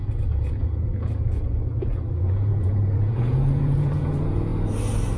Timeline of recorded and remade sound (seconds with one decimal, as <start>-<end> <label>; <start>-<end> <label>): 0.0-4.5 remade; 4.5-5.2 recorded